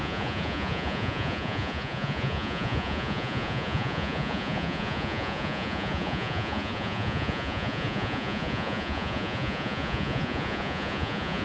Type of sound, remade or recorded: remade